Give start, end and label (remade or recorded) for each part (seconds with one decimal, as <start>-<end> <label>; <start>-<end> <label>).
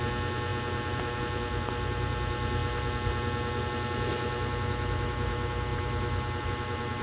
0.0-7.0 recorded